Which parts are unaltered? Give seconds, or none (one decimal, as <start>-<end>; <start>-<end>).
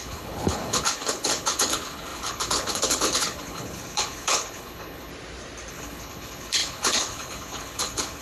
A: 5.1-5.7